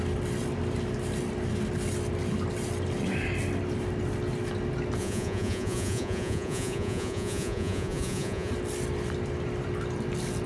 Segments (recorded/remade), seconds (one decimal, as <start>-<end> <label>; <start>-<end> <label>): 0.0-5.0 recorded; 5.0-8.5 remade; 8.5-10.5 recorded